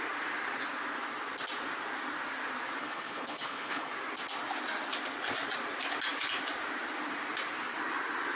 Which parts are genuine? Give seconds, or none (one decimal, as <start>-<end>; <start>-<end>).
0.0-2.8; 3.9-8.4